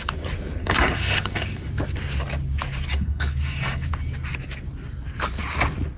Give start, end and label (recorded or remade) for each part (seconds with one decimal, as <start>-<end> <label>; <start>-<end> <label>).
0.0-0.6 recorded; 0.6-1.7 remade; 1.7-2.9 recorded; 2.9-3.9 remade; 3.9-6.0 recorded